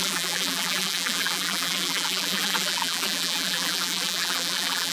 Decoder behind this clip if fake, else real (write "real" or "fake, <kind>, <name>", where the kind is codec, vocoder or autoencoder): fake, vocoder, BigVGAN v2